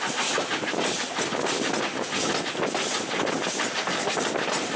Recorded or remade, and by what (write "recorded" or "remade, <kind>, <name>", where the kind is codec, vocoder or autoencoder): recorded